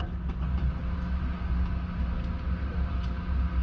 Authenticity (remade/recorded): recorded